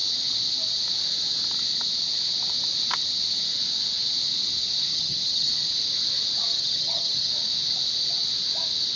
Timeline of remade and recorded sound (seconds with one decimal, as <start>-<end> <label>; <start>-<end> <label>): 0.0-4.9 recorded; 4.9-5.5 remade; 5.5-6.5 recorded; 6.5-7.3 remade; 7.3-9.0 recorded